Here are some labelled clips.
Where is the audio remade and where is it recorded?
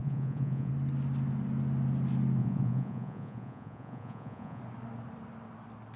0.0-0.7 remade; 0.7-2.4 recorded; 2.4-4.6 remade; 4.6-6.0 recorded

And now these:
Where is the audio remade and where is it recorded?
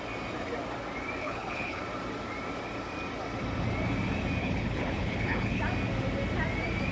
0.0-1.2 recorded; 1.2-1.8 remade; 1.8-4.4 recorded; 4.4-5.6 remade; 5.6-6.9 recorded